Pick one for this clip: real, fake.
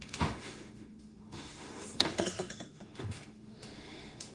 fake